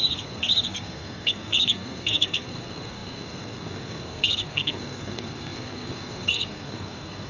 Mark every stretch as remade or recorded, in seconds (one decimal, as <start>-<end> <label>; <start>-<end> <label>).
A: 0.0-7.3 remade